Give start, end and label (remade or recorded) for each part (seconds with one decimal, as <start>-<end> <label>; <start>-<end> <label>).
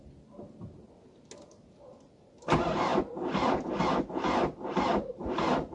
0.0-5.7 recorded